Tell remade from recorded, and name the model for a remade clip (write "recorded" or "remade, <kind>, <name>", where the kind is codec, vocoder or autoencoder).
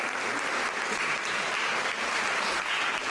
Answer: recorded